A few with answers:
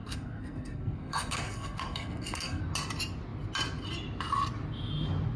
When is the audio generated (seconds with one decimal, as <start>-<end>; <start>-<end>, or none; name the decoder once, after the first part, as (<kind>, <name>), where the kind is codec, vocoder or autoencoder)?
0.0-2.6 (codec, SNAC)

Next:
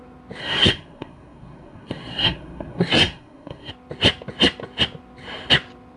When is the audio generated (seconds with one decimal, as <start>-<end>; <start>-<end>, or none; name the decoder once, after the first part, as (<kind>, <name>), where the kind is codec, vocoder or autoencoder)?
0.4-3.7 (codec, SNAC)

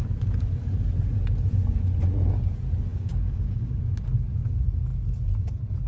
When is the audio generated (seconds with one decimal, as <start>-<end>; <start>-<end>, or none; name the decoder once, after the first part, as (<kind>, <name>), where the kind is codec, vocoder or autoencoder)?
2.9-3.8 (codec, DAC)

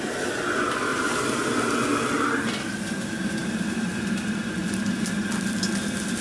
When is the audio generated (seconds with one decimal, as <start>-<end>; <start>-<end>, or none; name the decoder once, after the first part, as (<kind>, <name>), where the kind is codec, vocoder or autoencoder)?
0.9-1.5 (vocoder, BigVGAN v2); 3.4-3.9; 4.6-5.1